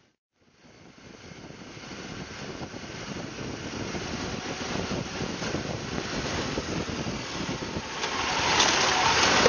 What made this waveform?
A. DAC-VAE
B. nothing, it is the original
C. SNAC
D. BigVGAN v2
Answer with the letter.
B